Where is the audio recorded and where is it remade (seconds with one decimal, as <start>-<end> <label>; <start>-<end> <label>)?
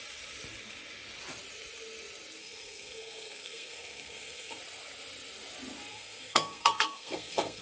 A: 0.0-2.4 recorded; 2.4-4.6 remade; 4.6-5.9 recorded; 5.9-7.6 remade